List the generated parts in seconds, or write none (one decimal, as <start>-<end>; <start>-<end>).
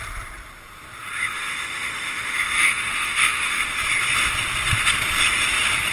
1.2-3.8